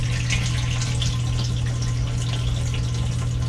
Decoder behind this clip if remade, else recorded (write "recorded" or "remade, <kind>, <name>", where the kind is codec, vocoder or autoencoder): recorded